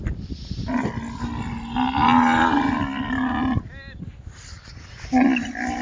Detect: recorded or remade recorded